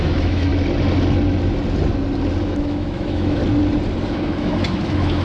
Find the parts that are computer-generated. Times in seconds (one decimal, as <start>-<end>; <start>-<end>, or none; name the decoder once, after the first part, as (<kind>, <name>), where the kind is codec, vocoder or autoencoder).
0.0-0.5 (autoencoder, DAC-VAE); 2.4-3.4; 4.1-5.2